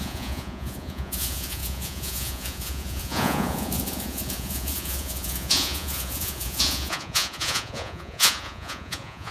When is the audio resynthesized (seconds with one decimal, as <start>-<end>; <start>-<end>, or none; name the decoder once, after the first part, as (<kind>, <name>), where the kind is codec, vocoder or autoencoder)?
0.0-9.3 (vocoder, Vocos)